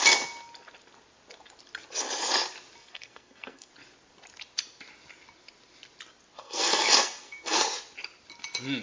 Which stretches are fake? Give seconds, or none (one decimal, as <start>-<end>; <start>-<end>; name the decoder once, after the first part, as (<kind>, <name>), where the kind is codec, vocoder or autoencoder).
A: 2.8-3.7 (codec, SNAC); 6.4-7.6